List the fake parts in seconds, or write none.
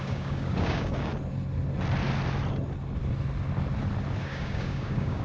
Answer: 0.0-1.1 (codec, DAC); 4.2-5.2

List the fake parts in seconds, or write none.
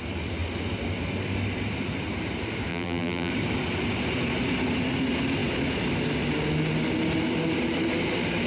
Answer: 2.7-3.3 (vocoder, BigVGAN v2)